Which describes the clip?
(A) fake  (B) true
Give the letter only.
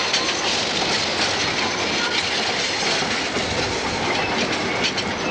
B